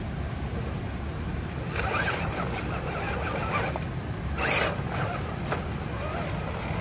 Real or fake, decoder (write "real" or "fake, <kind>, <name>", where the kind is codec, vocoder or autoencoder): real